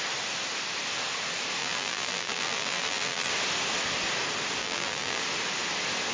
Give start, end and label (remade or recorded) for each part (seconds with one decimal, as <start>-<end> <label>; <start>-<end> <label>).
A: 0.0-1.6 recorded; 1.6-3.3 remade; 3.3-4.6 recorded; 4.6-5.2 remade; 5.2-6.1 recorded